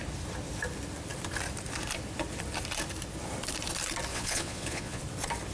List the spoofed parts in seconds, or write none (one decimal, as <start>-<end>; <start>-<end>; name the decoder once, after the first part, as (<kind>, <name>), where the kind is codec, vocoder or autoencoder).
4.1-5.0 (vocoder, Vocos)